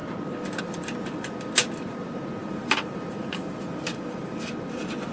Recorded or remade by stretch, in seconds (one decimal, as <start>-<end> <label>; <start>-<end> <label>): 0.0-2.4 recorded; 2.4-4.5 remade; 4.5-5.1 recorded